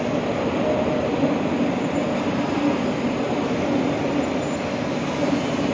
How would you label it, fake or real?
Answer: real